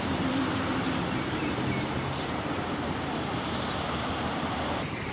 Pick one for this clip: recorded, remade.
remade